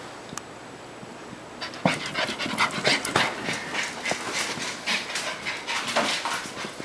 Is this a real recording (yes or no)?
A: yes